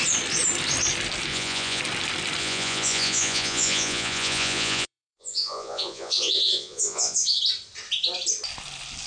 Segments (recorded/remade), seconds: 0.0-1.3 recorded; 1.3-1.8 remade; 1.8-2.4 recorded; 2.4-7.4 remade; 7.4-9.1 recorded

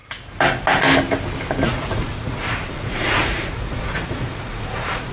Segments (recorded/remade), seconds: 0.0-1.7 recorded; 1.7-5.1 remade

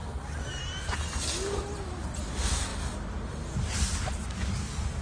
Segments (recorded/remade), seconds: 0.0-5.0 recorded

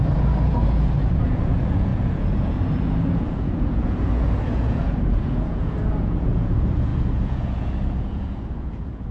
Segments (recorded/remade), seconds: 0.0-9.1 remade